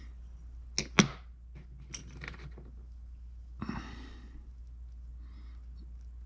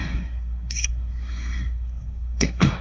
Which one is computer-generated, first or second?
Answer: second